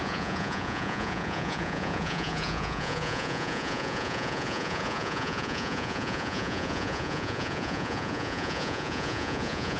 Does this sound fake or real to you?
fake